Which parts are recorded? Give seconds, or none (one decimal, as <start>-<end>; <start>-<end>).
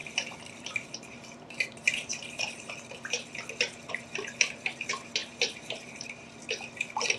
2.7-5.2; 6.4-7.2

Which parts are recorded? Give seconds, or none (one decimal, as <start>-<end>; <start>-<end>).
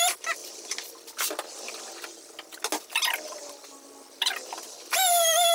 0.0-5.5